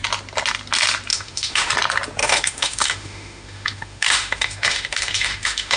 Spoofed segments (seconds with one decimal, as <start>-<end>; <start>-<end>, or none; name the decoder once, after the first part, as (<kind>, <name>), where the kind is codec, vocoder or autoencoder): 1.1-1.7 (autoencoder, DAC-VAE); 2.2-5.8